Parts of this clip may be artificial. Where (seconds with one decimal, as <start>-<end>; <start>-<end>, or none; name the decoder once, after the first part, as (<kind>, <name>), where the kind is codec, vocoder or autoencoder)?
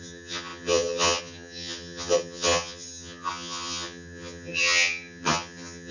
0.0-5.9 (vocoder, HiFi-GAN)